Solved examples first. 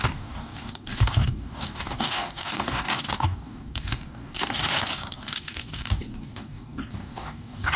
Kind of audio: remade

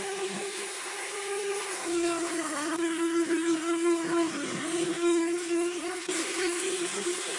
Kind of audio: remade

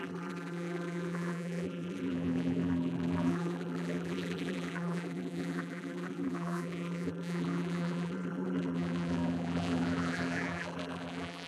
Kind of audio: remade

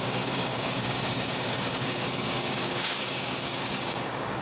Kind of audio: remade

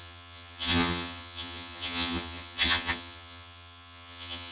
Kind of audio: remade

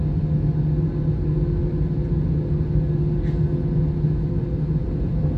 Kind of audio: recorded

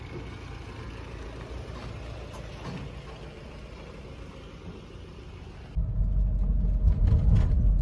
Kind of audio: recorded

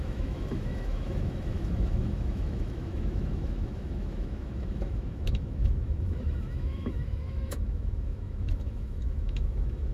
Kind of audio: remade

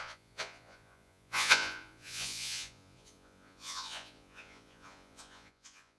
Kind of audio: remade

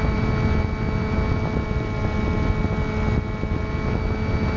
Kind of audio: recorded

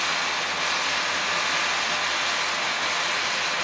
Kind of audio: recorded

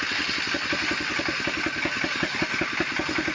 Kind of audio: recorded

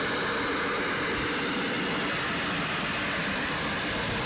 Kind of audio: recorded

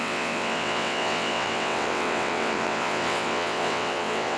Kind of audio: remade